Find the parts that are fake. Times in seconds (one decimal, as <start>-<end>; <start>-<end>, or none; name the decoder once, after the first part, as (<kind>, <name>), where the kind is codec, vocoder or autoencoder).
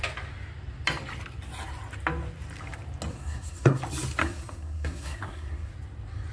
3.1-3.8 (codec, SNAC); 4.2-5.7